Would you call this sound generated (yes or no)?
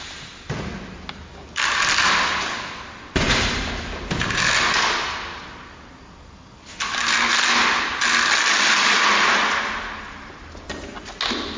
no